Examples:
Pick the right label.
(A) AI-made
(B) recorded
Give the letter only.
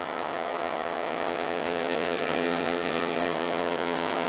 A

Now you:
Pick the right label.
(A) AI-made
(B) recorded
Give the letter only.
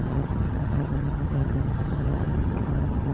A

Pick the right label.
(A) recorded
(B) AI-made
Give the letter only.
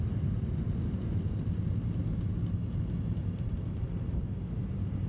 A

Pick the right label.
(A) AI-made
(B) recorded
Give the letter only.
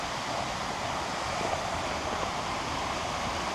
B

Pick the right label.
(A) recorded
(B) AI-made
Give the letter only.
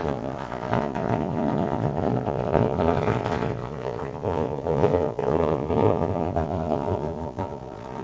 B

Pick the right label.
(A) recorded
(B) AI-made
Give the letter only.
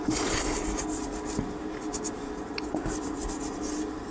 A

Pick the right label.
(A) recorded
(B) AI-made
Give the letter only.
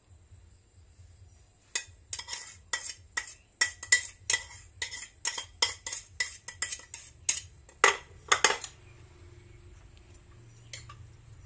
A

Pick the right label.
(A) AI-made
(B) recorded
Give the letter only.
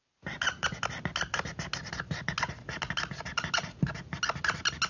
B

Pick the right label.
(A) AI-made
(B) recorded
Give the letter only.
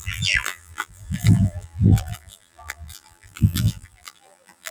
A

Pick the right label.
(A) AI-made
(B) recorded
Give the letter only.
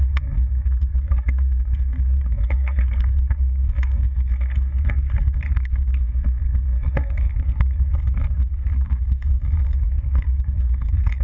A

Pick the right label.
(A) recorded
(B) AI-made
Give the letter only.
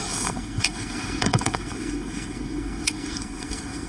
B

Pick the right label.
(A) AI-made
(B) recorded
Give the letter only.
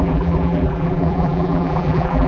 A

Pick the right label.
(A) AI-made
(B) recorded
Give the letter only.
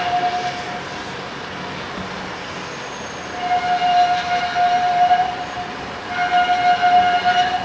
B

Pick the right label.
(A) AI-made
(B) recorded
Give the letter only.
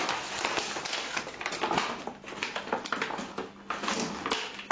B